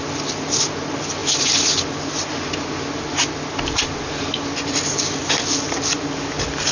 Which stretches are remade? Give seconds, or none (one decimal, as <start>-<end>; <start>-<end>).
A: none